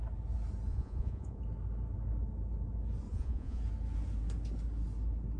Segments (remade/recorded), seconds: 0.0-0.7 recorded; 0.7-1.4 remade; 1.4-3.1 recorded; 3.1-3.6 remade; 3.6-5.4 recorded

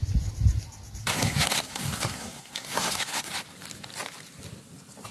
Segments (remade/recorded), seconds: 0.0-1.0 recorded; 1.0-3.3 remade; 3.3-5.1 recorded

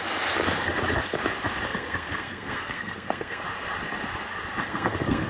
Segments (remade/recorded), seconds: 0.0-1.7 recorded; 1.7-3.4 remade; 3.4-4.6 recorded; 4.6-5.3 remade

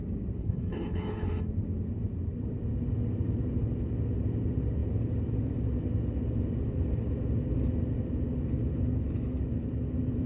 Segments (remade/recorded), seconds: 0.0-0.4 recorded; 0.4-1.4 remade; 1.4-10.3 recorded

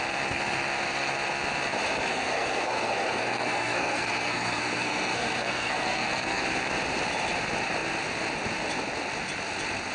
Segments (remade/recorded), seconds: 0.0-2.1 recorded; 2.1-6.4 remade; 6.4-9.9 recorded

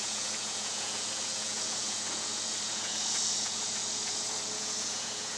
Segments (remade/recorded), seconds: 0.0-5.4 remade

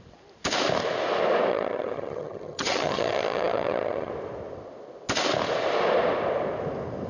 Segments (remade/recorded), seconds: 0.0-1.5 recorded; 1.5-4.1 remade; 4.1-7.1 recorded

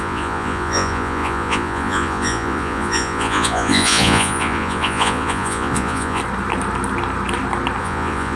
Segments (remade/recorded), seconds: 0.0-6.2 remade; 6.2-7.8 recorded; 7.8-8.4 remade